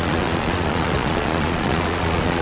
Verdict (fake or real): fake